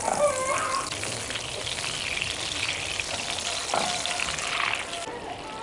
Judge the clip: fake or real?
real